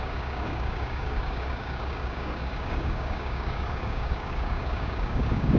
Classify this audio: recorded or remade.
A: remade